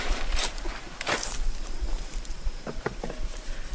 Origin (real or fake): fake